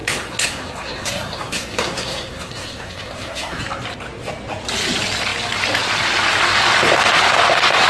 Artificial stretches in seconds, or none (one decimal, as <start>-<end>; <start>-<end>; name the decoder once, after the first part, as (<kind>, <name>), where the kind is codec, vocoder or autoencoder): 0.0-3.6 (codec, SNAC)